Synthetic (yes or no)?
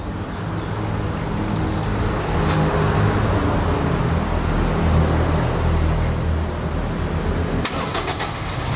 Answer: no